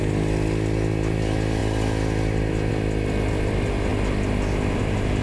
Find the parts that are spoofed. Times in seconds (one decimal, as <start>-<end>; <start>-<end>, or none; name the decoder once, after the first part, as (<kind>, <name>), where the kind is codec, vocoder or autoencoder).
none